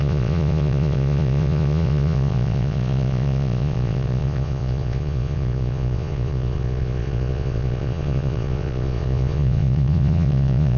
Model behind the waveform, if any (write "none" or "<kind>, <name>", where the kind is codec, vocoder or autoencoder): vocoder, Vocos